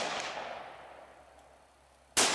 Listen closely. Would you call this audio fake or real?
real